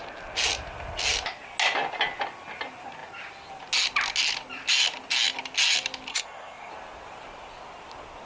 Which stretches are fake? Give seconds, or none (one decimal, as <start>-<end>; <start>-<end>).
6.1-6.7